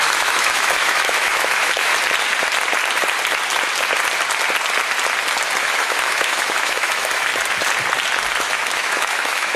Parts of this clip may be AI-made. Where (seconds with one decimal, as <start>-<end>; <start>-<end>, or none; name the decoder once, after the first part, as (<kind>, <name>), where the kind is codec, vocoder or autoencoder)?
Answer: 0.0-1.9 (autoencoder, DAC-VAE); 5.6-7.3; 8.4-9.6